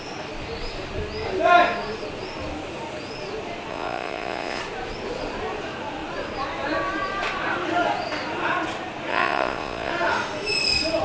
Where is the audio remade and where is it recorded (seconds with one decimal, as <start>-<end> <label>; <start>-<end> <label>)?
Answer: 0.0-3.7 recorded; 3.7-4.6 remade; 4.6-9.1 recorded; 9.1-9.9 remade; 9.9-11.0 recorded